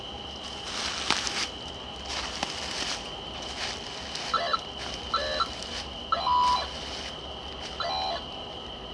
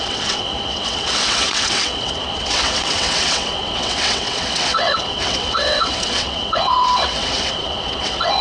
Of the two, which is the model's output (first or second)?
second